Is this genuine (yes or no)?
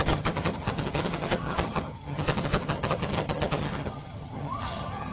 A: no